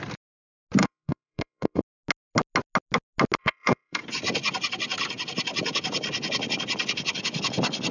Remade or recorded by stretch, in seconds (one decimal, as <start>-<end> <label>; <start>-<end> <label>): 0.0-0.8 recorded; 0.8-1.8 remade; 1.8-3.4 recorded; 3.4-4.0 remade; 4.0-7.9 recorded